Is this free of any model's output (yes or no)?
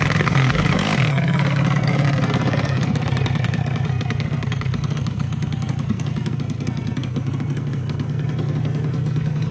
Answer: no